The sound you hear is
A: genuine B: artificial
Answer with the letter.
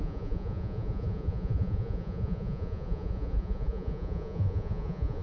B